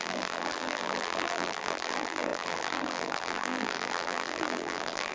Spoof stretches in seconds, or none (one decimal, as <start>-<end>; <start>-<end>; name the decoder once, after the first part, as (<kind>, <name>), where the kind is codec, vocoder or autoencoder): 0.0-5.1 (vocoder, BigVGAN v2)